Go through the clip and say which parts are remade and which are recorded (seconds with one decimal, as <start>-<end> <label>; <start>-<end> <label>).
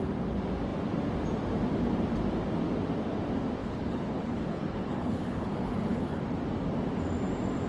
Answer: 0.0-3.6 recorded; 3.6-6.2 remade; 6.2-7.7 recorded